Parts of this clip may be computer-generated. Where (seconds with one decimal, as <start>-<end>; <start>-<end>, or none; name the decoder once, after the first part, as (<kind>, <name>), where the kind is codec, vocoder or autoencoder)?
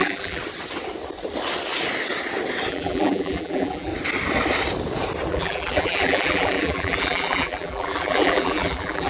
0.0-0.4 (vocoder, BigVGAN v2); 2.7-3.9; 5.3-9.1